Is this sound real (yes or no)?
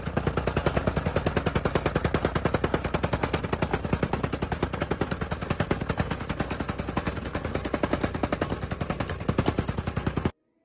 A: yes